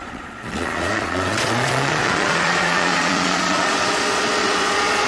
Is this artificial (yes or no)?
yes